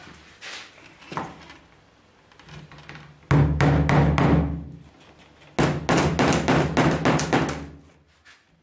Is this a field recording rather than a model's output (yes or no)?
yes